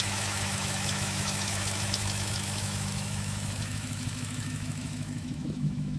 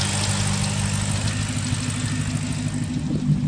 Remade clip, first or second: first